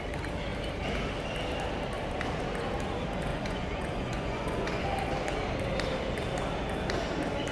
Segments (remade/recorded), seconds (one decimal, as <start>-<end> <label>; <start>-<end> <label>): 0.0-3.3 recorded; 3.3-4.8 remade; 4.8-7.5 recorded